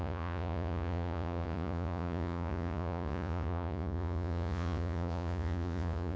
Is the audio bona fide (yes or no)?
no